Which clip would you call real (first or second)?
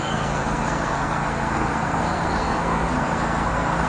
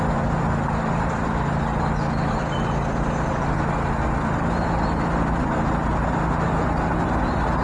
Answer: second